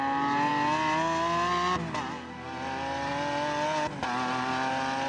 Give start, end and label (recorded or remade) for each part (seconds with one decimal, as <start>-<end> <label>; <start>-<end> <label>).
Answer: 0.0-5.1 recorded

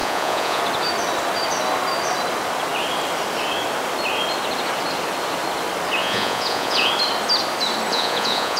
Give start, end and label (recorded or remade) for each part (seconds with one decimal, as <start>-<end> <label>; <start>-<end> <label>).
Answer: 0.0-0.6 remade; 0.6-6.0 recorded; 6.0-6.9 remade; 6.9-7.9 recorded; 7.9-8.6 remade

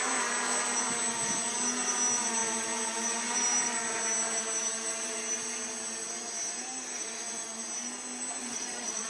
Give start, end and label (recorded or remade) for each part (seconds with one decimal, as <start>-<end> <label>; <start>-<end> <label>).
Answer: 0.0-8.4 recorded; 8.4-9.1 remade

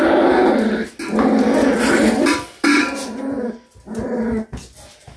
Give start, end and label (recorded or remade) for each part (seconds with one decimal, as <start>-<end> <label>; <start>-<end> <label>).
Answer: 0.0-5.2 recorded

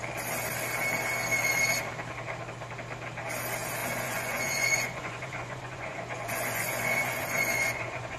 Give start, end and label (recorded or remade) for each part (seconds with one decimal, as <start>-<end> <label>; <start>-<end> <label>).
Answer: 0.0-3.8 recorded; 3.8-8.2 remade

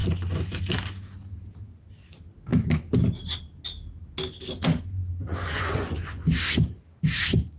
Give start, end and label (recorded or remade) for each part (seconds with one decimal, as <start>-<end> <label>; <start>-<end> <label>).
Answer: 0.0-5.2 recorded; 5.2-6.3 remade; 6.3-7.6 recorded